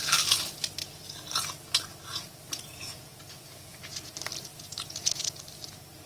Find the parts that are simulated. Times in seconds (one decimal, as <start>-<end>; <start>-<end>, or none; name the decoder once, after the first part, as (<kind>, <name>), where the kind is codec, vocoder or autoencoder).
2.1-4.1 (vocoder, Vocos); 4.5-5.3